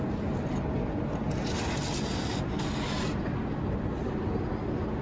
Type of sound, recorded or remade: recorded